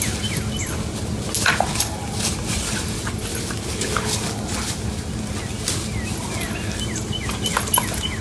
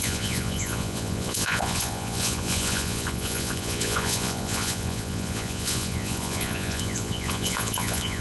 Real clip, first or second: first